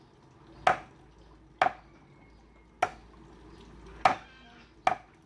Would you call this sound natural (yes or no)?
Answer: yes